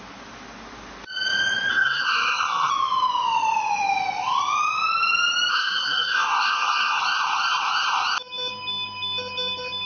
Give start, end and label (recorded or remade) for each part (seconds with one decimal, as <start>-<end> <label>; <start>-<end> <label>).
0.0-1.7 recorded; 1.7-2.7 remade; 2.7-5.5 recorded; 5.5-7.0 remade; 7.0-9.9 recorded